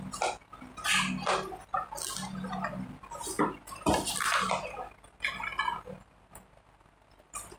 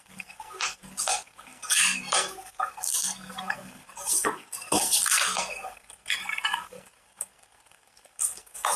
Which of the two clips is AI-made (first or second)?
second